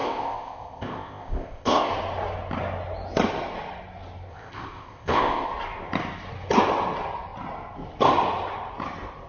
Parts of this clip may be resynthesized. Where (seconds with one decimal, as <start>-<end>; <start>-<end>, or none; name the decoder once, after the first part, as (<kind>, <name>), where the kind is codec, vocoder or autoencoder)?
0.0-1.9 (codec, ZipCodec); 4.3-5.5